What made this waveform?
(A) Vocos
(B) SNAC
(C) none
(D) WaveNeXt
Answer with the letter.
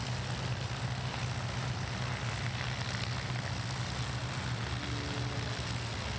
C